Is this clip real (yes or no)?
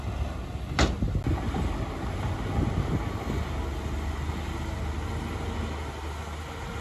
yes